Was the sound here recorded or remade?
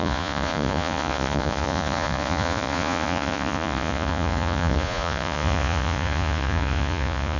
remade